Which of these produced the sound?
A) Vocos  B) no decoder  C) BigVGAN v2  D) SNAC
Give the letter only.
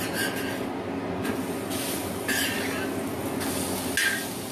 B